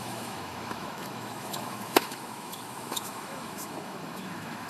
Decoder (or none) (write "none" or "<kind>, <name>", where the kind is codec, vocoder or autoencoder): autoencoder, DAC-VAE